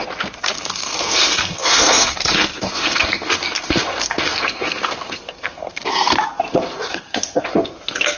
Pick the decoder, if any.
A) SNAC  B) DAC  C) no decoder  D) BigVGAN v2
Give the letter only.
A